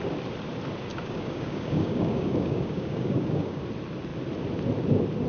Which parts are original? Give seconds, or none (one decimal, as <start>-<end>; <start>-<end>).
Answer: 0.0-0.9; 3.6-5.3